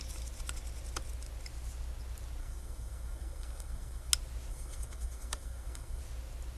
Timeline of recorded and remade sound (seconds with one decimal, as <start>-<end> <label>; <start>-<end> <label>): 0.0-2.4 recorded; 2.4-4.1 remade; 4.1-4.5 recorded; 4.5-6.0 remade; 6.0-6.6 recorded